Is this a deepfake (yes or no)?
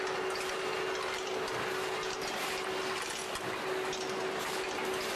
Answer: no